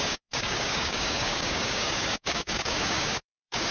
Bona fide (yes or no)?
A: no